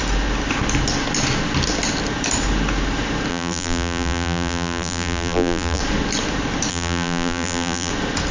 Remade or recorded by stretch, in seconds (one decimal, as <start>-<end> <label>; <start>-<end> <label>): 0.0-3.3 recorded; 3.3-5.8 remade; 5.8-6.7 recorded; 6.7-7.9 remade; 7.9-8.3 recorded